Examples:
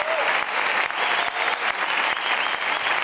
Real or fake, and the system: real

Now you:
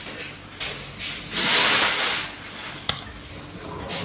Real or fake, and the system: real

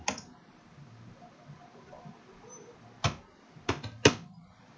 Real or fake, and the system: real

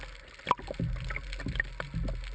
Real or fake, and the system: real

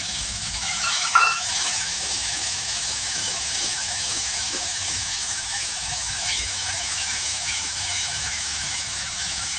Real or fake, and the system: fake, autoencoder, DAC-VAE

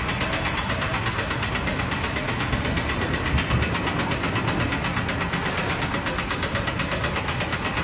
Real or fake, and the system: real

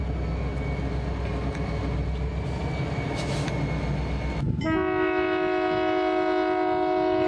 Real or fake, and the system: real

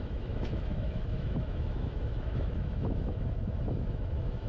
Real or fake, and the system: fake, autoencoder, DAC-VAE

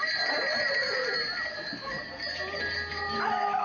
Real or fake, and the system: real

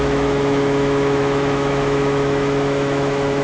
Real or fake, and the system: fake, autoencoder, DAC-VAE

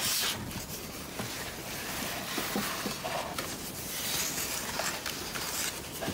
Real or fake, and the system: real